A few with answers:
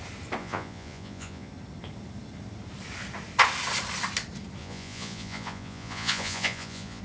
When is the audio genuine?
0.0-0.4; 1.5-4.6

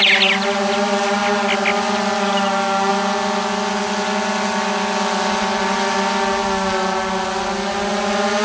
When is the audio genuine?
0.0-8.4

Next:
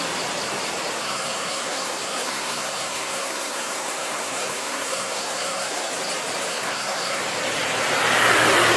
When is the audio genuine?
0.0-1.0; 5.9-6.5; 7.2-8.8

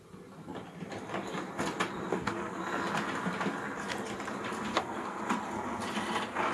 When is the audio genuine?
0.0-2.1; 2.6-4.7; 5.2-6.5

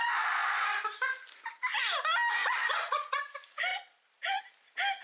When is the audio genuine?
0.0-2.4; 3.2-3.7; 4.4-5.0

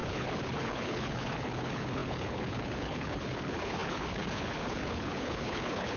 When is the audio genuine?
none

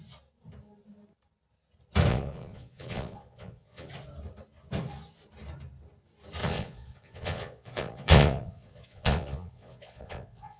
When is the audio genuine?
0.0-2.1; 3.9-6.4

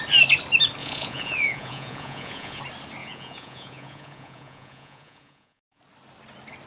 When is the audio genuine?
0.0-0.8; 2.6-3.0; 5.8-6.7